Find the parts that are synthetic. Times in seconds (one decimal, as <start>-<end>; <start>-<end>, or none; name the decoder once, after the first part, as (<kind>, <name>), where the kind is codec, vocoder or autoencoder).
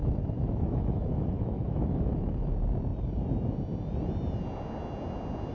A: 0.0-2.5 (autoencoder, DAC-VAE)